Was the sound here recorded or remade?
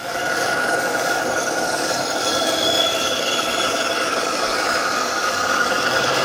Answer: remade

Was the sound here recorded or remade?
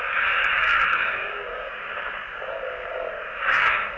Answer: remade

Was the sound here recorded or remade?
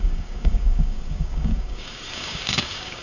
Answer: remade